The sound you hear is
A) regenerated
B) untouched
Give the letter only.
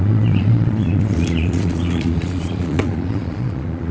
A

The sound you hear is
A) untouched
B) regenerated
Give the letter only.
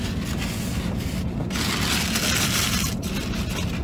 A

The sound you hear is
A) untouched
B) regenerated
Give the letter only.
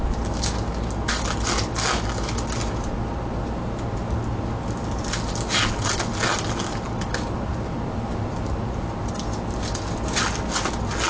A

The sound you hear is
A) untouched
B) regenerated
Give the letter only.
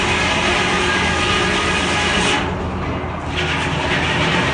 A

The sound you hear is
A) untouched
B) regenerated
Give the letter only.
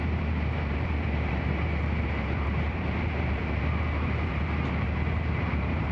B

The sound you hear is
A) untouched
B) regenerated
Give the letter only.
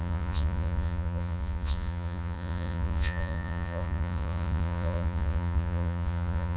B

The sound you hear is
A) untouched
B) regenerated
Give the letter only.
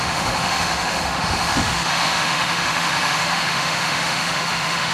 B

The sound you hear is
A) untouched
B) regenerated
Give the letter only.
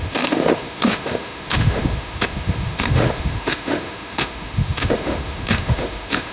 B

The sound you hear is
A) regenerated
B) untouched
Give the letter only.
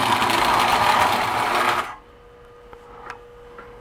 B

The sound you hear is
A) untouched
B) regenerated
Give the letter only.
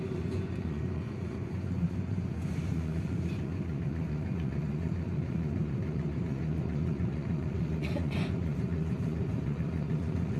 B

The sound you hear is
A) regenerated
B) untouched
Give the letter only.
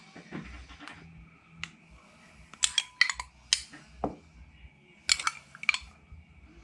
B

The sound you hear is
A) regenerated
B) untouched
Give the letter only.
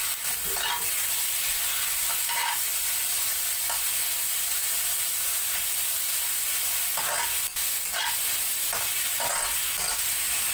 B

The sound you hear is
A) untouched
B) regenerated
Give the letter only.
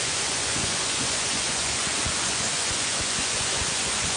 B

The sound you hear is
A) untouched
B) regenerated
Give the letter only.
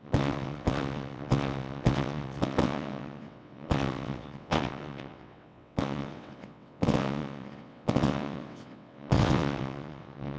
B